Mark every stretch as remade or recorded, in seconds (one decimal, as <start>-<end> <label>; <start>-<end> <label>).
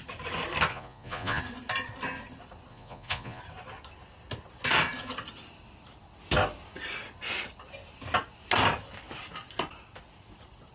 0.0-0.7 recorded; 0.7-1.4 remade; 1.4-2.7 recorded; 2.7-3.4 remade; 3.4-10.7 recorded